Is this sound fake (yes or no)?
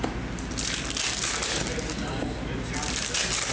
no